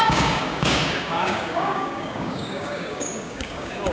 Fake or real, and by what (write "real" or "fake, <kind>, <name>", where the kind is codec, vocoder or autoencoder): fake, codec, DAC